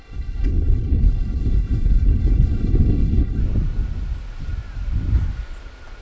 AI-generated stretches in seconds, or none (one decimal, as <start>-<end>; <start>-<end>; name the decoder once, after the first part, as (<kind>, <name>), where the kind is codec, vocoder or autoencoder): 0.0-3.4 (codec, HILCodec)